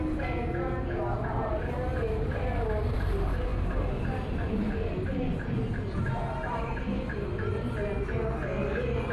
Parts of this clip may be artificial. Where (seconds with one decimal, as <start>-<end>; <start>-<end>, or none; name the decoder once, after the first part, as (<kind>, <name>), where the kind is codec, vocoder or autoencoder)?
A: none

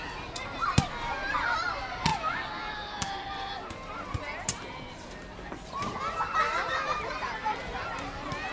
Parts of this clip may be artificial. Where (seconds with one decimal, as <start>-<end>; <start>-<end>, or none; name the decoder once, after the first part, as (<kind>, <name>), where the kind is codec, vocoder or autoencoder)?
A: 6.5-7.1 (vocoder, BigVGAN v2)

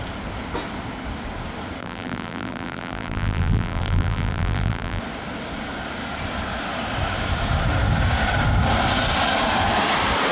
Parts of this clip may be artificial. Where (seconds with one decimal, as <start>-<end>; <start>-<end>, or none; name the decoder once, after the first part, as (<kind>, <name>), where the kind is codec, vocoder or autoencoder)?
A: 1.8-5.0 (vocoder, BigVGAN v2)

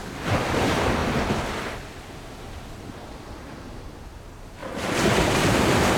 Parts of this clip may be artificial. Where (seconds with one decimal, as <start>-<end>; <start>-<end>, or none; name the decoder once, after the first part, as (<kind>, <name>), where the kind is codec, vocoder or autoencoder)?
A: 0.5-1.0 (vocoder, BigVGAN v2); 3.8-4.6; 5.2-6.0